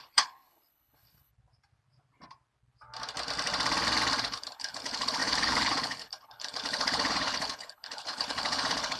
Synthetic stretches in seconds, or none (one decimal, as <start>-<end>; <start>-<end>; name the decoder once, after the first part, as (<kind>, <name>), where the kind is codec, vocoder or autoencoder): 0.0-1.3 (codec, HILCodec); 4.2-9.0